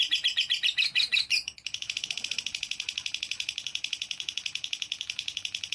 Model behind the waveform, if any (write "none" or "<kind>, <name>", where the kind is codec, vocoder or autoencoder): vocoder, BigVGAN v2